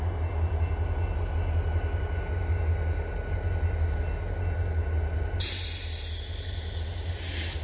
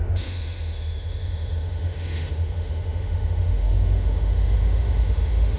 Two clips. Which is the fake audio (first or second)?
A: second